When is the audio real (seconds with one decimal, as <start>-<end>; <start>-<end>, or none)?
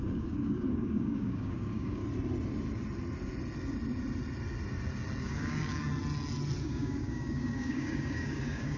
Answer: 2.0-5.2; 5.9-6.6